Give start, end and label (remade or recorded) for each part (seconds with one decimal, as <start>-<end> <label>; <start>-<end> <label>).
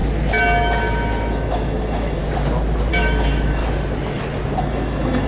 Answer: 0.0-1.3 recorded; 1.3-2.2 remade; 2.2-2.9 recorded; 2.9-3.6 remade; 3.6-4.6 recorded; 4.6-5.3 remade